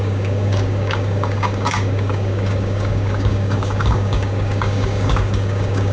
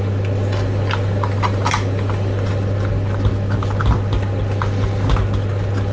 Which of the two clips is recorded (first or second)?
second